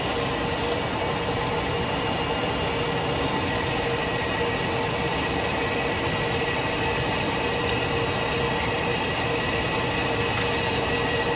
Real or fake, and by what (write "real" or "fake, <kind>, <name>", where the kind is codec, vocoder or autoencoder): real